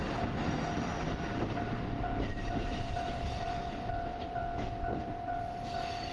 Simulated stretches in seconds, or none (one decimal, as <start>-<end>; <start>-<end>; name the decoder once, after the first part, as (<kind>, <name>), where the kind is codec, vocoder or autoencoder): 0.0-4.5 (vocoder, BigVGAN v2); 5.0-6.1